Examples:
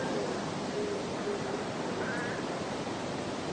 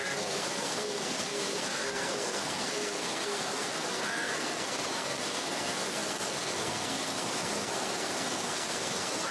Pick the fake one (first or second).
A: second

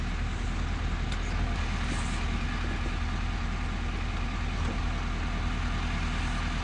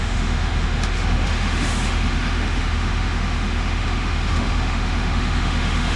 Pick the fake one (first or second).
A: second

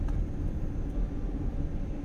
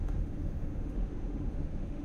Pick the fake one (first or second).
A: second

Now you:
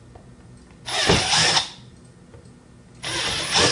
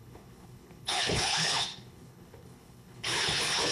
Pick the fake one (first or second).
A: second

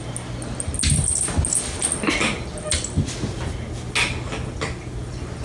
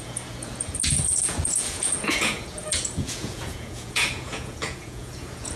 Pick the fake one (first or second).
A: second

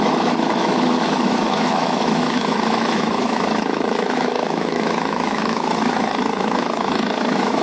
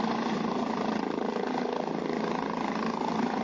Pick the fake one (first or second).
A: first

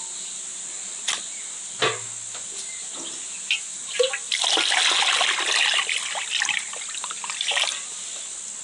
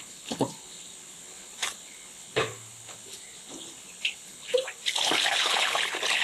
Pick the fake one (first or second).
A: second